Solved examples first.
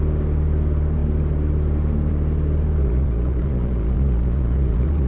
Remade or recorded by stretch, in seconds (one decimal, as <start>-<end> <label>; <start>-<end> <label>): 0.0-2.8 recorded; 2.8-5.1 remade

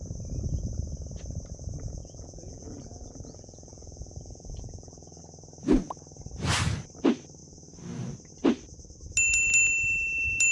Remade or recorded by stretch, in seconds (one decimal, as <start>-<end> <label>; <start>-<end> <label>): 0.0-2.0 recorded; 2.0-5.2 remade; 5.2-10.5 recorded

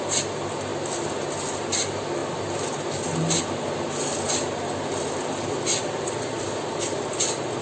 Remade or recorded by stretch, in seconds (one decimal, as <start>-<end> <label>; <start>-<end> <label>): 0.0-7.6 recorded

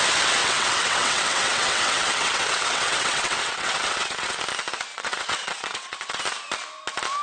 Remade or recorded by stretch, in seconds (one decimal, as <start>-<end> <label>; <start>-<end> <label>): 0.0-0.4 recorded; 0.4-4.4 remade; 4.4-4.9 recorded; 4.9-6.2 remade; 6.2-7.2 recorded

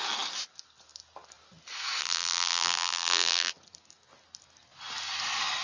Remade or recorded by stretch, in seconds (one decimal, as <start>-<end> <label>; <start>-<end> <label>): 0.0-2.0 recorded; 2.0-3.5 remade; 3.5-5.6 recorded